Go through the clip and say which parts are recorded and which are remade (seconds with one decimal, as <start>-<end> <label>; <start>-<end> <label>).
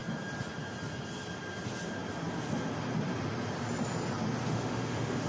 0.0-4.5 recorded; 4.5-5.3 remade